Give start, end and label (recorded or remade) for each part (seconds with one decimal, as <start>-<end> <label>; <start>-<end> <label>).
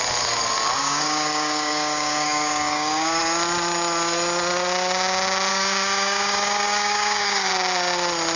0.0-0.8 recorded; 0.8-3.2 remade; 3.2-5.5 recorded; 5.5-7.5 remade; 7.5-8.4 recorded